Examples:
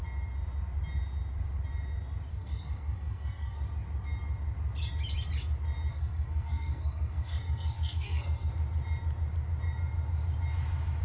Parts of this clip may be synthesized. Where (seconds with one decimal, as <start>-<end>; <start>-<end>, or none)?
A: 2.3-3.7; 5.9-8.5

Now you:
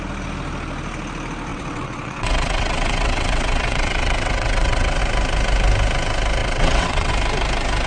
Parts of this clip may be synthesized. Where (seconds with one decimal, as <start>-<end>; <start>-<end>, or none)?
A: 1.5-5.0; 6.4-7.1

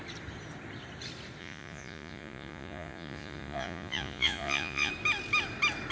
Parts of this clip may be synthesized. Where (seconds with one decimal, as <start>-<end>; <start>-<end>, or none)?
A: 1.4-4.9